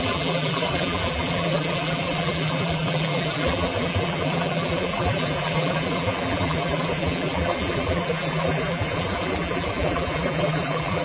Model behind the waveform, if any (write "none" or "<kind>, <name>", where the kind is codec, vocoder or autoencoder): vocoder, BigVGAN v2